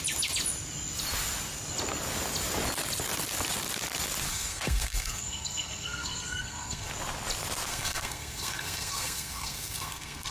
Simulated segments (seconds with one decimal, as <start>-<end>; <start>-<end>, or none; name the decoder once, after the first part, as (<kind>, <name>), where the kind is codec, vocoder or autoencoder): 4.3-6.9 (codec, SNAC); 7.7-10.3